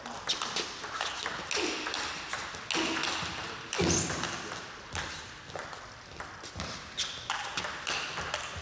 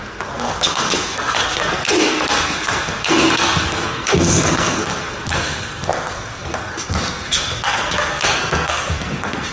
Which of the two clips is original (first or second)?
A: first